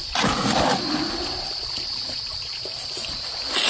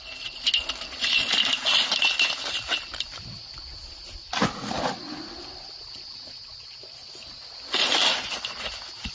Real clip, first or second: second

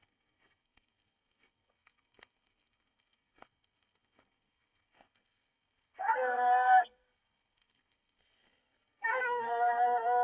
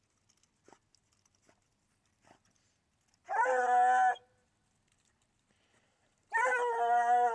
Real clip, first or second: second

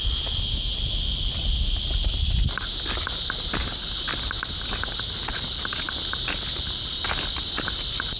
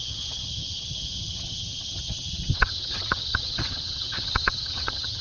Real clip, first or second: first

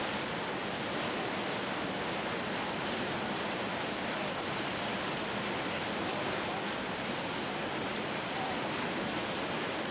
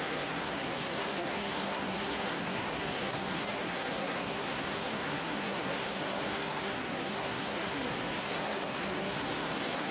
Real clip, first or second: first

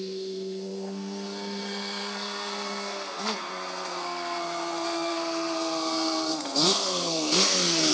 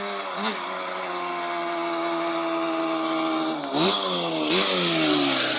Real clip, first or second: second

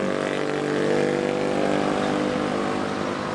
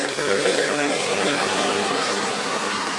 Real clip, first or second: first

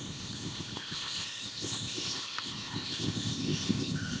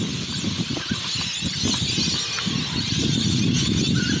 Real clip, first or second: second